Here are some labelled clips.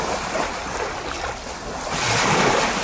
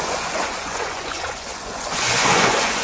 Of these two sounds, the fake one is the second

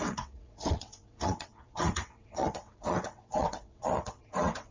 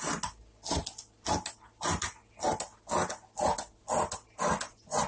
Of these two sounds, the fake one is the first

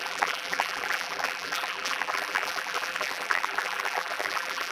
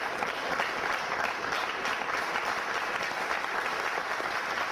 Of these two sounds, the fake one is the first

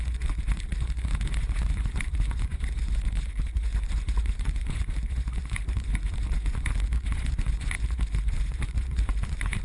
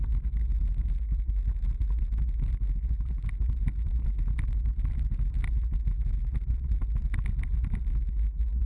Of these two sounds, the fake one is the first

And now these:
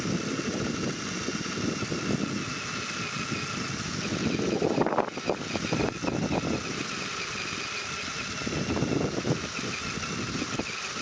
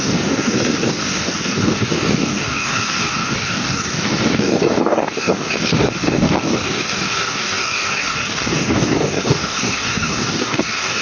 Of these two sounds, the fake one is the second